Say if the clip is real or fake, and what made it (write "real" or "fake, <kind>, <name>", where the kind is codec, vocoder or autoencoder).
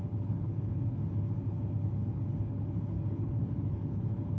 fake, codec, HILCodec